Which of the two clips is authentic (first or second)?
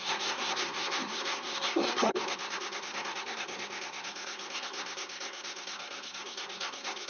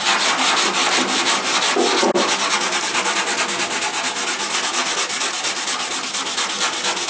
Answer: second